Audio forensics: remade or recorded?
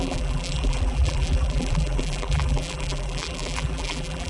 remade